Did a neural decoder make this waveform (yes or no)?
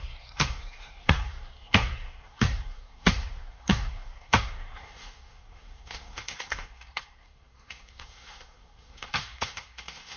yes